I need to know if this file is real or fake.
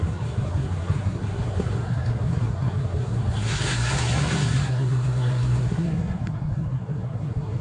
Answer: fake